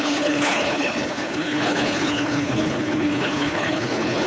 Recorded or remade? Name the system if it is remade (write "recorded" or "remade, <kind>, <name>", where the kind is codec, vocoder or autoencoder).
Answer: remade, codec, HILCodec